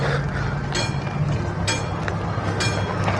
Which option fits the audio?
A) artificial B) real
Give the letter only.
B